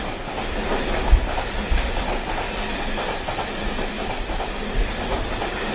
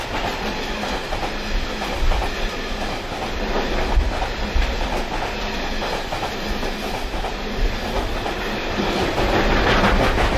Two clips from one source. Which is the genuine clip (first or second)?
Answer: second